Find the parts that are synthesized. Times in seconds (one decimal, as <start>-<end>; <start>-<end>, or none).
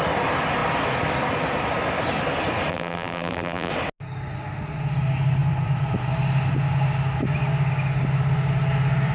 2.7-3.7